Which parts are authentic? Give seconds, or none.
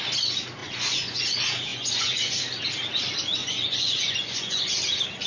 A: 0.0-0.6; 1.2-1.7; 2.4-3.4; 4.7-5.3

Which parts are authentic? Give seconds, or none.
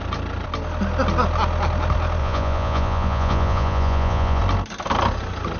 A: 0.0-2.2; 4.4-5.6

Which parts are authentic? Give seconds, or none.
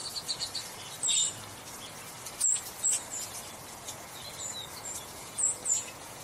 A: 0.0-3.7; 4.2-4.8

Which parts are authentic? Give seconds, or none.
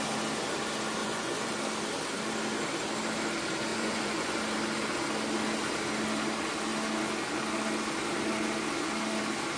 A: 0.0-1.0; 1.5-3.7; 4.4-9.6